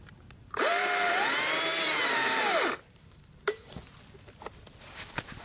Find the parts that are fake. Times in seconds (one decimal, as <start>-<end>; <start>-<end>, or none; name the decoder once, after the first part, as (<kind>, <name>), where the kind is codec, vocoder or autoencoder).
0.0-5.4 (vocoder, BigVGAN v2)